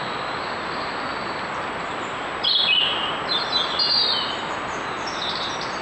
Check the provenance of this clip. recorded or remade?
recorded